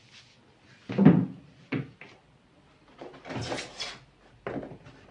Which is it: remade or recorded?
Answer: recorded